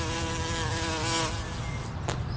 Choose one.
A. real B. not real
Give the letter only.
A